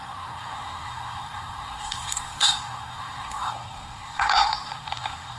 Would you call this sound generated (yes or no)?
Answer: yes